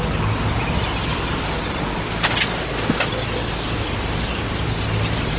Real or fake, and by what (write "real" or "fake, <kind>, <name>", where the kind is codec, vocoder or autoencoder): real